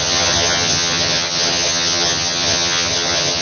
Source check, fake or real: fake